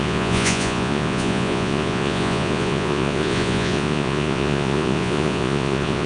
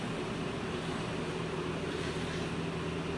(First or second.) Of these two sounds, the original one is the second